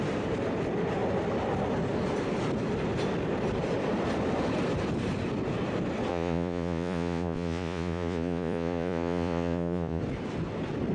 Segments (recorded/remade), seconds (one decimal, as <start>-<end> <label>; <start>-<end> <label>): 0.0-6.1 recorded; 6.1-10.0 remade; 10.0-10.9 recorded